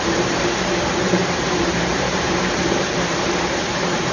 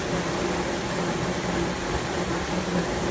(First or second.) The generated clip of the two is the first